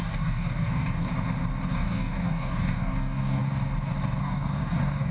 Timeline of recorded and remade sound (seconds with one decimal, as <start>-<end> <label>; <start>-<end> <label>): 0.0-1.1 remade; 1.1-1.7 recorded; 1.7-3.4 remade; 3.4-4.2 recorded; 4.2-5.1 remade